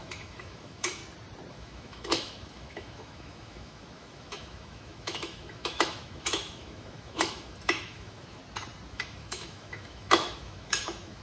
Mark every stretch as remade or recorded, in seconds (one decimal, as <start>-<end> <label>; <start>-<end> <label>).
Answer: 0.0-1.0 remade; 1.0-1.5 recorded; 1.5-8.4 remade; 8.4-8.9 recorded; 8.9-11.2 remade